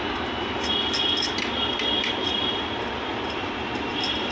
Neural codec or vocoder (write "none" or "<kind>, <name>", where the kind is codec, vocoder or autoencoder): none